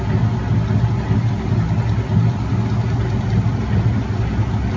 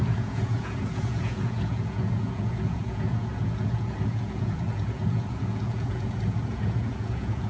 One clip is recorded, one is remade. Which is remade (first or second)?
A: second